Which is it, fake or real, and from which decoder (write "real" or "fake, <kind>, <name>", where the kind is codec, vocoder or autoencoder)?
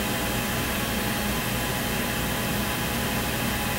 real